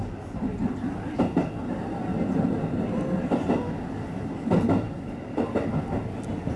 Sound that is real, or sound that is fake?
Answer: real